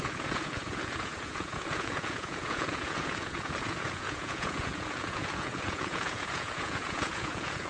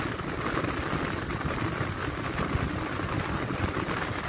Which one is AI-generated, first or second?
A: first